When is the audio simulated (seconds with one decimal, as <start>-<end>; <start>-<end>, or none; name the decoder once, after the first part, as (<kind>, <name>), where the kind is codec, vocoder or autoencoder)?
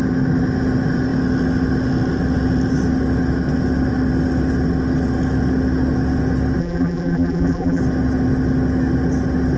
6.6-7.8 (vocoder, BigVGAN v2)